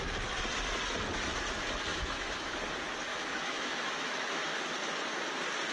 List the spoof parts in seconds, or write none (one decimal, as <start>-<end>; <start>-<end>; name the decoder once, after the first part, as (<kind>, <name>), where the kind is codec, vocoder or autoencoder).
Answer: 1.9-2.5 (autoencoder, DAC-VAE); 3.1-4.6